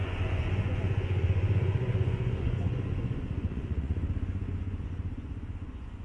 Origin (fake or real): fake